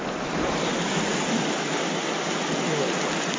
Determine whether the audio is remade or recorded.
recorded